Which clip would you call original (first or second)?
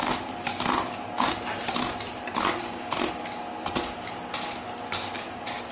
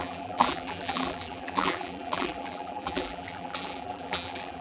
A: first